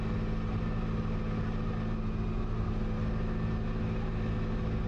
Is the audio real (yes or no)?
yes